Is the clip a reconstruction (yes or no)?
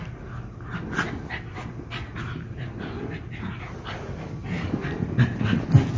no